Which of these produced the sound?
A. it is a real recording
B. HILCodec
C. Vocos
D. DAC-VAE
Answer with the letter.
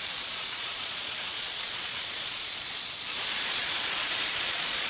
C